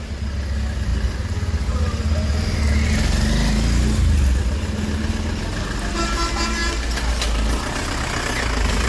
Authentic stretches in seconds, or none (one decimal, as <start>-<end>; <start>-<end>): 0.0-8.9